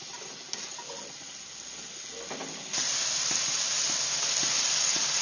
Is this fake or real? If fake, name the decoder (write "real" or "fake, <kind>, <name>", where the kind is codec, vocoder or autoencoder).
real